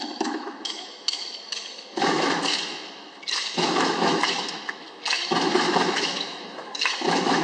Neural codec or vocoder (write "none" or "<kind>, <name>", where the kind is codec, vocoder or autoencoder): autoencoder, DAC-VAE